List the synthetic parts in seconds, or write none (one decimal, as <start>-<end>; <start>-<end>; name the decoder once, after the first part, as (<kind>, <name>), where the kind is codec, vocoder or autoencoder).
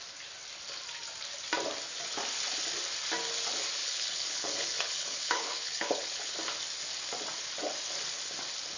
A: 3.8-6.3 (codec, HILCodec)